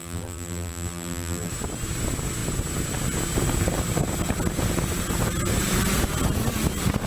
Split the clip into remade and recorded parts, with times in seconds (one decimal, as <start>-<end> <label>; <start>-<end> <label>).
0.0-1.5 remade; 1.5-7.1 recorded

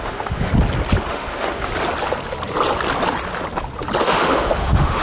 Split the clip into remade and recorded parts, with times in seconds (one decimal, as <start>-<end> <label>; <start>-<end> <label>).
0.0-0.5 remade; 0.5-1.1 recorded; 1.1-1.7 remade; 1.7-4.0 recorded; 4.0-5.0 remade

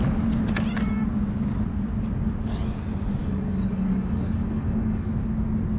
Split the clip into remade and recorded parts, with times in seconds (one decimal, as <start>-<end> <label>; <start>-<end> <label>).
0.0-3.2 recorded; 3.2-5.1 remade; 5.1-5.8 recorded

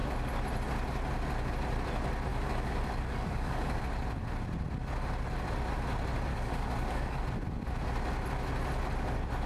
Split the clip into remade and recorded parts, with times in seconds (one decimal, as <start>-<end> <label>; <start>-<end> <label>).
0.0-2.3 recorded; 2.3-3.8 remade; 3.8-6.3 recorded; 6.3-7.2 remade; 7.2-9.5 recorded

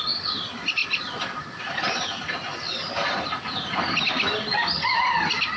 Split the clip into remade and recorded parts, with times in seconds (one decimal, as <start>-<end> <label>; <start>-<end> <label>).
0.0-0.8 recorded; 0.8-3.4 remade; 3.4-5.6 recorded

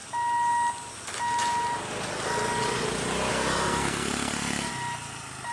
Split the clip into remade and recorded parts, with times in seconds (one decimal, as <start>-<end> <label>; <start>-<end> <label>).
0.0-3.3 recorded; 3.3-4.7 remade; 4.7-5.5 recorded

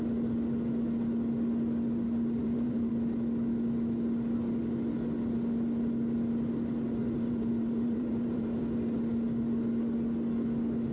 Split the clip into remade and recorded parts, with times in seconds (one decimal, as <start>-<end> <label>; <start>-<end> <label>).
0.0-2.4 recorded; 2.4-2.9 remade; 2.9-7.0 recorded; 7.0-8.6 remade; 8.6-10.9 recorded

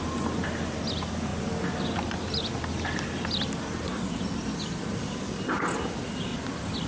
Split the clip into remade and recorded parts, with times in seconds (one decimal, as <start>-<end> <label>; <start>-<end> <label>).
0.0-1.3 recorded; 1.3-5.4 remade; 5.4-6.3 recorded; 6.3-6.9 remade